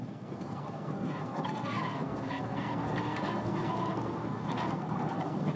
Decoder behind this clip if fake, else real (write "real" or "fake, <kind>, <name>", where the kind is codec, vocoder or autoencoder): fake, codec, SNAC